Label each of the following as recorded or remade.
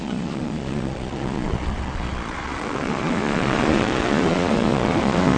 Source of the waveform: remade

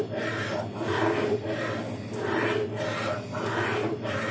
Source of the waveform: recorded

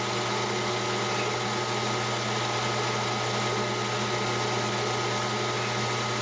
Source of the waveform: recorded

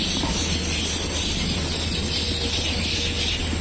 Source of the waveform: recorded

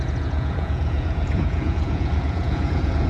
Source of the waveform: remade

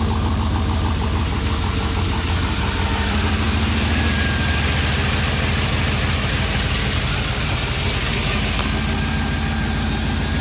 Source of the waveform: recorded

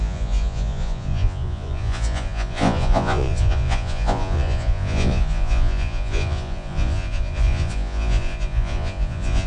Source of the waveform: remade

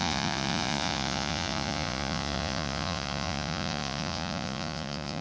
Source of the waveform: remade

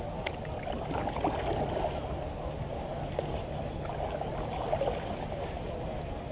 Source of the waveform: recorded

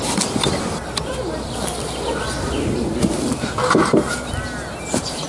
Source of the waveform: recorded